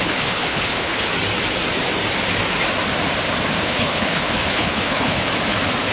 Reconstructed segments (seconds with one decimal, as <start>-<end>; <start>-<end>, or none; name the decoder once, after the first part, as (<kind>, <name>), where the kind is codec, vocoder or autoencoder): 0.0-1.1 (codec, HILCodec); 3.6-5.3